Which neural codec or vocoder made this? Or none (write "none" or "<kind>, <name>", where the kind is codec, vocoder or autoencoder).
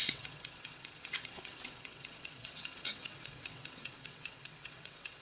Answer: vocoder, WaveNeXt